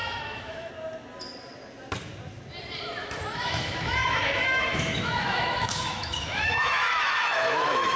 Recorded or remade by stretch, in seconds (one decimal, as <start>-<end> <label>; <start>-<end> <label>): 0.0-0.7 remade; 0.7-3.0 recorded; 3.0-8.0 remade